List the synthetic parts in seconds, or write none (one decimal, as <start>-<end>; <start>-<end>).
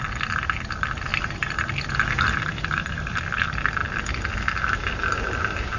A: 1.1-3.2